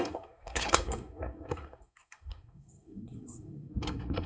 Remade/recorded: remade